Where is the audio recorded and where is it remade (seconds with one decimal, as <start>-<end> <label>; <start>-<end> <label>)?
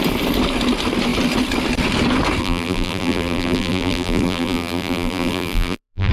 0.0-2.4 recorded; 2.4-6.1 remade